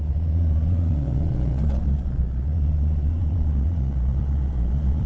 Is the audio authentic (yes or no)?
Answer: no